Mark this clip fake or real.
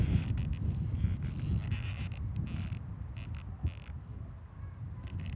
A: real